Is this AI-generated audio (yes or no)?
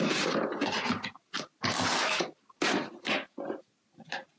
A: no